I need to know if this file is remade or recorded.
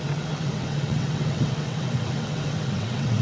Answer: remade